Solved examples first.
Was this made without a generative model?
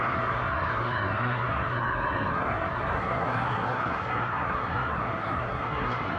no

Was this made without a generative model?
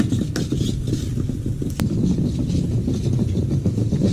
yes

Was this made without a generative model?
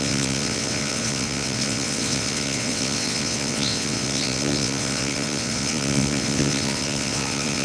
no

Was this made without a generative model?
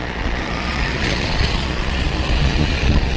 no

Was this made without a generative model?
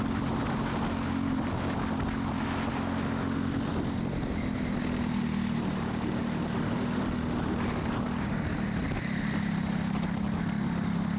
yes